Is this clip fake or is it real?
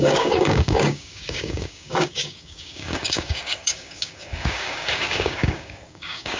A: fake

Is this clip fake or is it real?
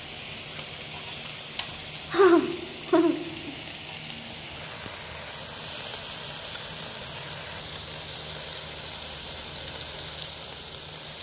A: real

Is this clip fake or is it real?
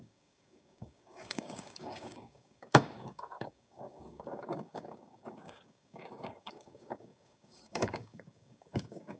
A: fake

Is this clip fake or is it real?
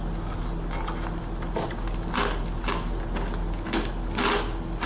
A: real